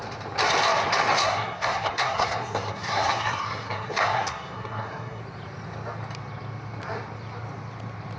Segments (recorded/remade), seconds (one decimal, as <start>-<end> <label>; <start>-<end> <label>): 0.0-1.2 recorded; 1.2-5.2 remade; 5.2-8.2 recorded